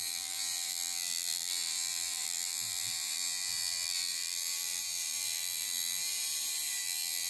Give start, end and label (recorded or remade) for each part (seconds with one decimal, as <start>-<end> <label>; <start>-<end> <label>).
0.0-6.2 remade; 6.2-6.8 recorded; 6.8-7.3 remade